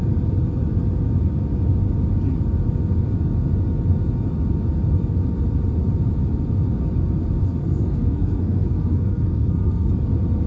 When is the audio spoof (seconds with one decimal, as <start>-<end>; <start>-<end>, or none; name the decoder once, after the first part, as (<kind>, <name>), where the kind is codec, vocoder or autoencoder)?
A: 7.6-9.9 (codec, SNAC)